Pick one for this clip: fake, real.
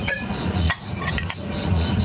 fake